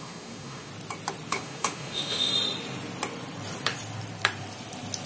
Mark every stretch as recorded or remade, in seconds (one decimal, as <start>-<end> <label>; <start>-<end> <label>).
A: 0.0-0.7 remade; 0.7-1.3 recorded; 1.3-2.3 remade; 2.3-5.1 recorded